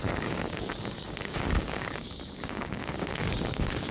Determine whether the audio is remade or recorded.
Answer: remade